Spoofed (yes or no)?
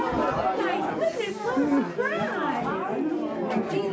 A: no